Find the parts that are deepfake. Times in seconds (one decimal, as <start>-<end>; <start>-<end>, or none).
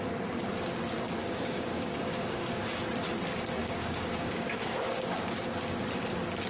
1.2-2.8; 3.6-5.2